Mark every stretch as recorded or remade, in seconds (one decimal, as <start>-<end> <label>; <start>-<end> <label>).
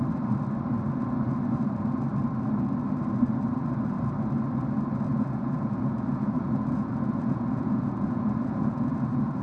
0.0-5.1 recorded; 5.1-9.4 remade